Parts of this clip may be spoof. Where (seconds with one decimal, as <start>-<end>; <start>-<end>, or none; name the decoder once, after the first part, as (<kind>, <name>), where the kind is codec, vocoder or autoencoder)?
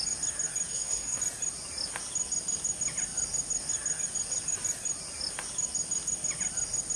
0.7-1.2 (codec, SNAC)